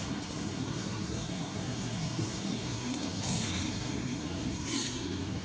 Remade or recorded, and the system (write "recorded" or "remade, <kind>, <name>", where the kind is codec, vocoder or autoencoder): remade, codec, SNAC